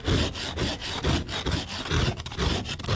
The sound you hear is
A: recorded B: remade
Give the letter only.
A